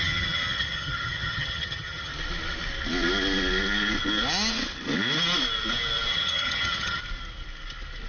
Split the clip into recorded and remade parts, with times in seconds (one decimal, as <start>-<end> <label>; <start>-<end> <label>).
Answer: 0.0-2.1 remade; 2.1-6.1 recorded; 6.1-7.0 remade; 7.0-8.1 recorded